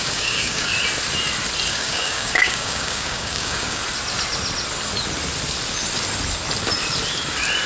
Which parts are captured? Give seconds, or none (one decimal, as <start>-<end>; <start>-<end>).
0.7-1.7; 3.8-7.7